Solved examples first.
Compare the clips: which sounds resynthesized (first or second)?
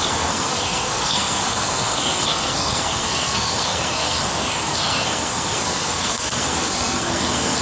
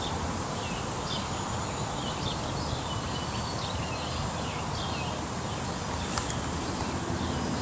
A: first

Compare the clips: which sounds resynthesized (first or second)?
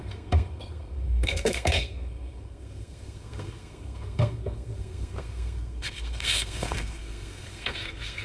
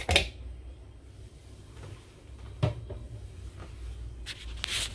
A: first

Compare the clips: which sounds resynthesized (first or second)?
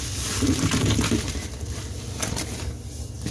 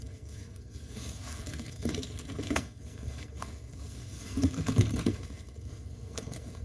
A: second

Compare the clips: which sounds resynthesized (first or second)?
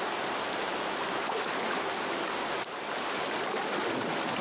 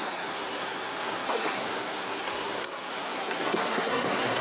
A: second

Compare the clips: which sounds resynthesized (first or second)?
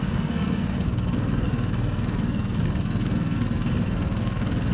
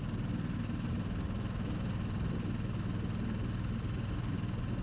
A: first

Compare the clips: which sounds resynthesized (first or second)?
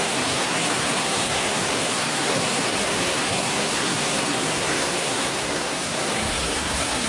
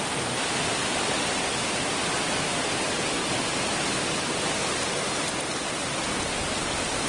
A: first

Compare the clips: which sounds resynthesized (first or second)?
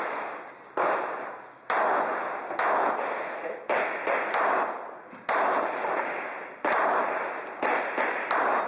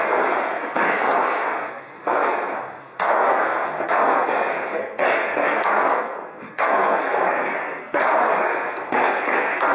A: second